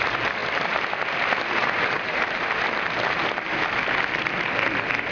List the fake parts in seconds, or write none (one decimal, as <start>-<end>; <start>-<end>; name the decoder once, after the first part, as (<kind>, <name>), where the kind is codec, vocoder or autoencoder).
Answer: 1.6-2.5 (vocoder, BigVGAN v2)